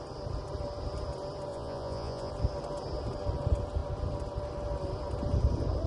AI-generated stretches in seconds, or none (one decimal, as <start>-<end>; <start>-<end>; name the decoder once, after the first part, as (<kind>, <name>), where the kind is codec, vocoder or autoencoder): 1.5-2.3 (vocoder, Vocos)